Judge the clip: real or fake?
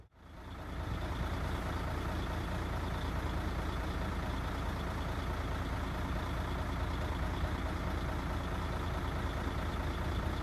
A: real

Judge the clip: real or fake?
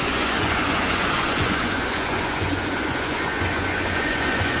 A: fake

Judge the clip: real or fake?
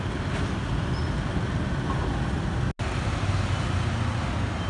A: real